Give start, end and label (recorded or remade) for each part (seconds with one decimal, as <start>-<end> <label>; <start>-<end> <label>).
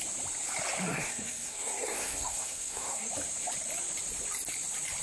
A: 0.0-0.9 recorded; 0.9-3.1 remade; 3.1-5.0 recorded